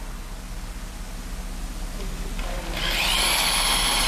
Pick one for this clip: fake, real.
real